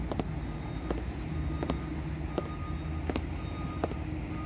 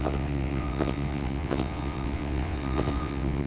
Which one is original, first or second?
first